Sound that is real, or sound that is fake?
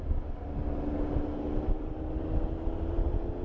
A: fake